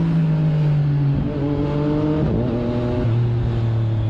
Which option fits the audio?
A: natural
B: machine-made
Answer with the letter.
A